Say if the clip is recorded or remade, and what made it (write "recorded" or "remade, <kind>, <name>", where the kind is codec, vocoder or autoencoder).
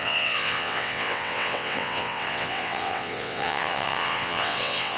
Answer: remade, vocoder, WaveNeXt